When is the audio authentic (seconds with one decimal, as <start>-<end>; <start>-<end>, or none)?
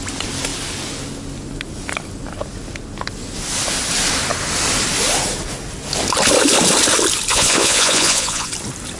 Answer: 0.0-7.3; 8.5-9.0